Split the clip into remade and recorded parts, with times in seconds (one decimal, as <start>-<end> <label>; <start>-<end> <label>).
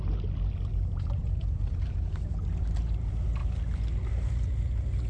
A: 0.0-0.7 recorded; 0.7-2.3 remade; 2.3-5.1 recorded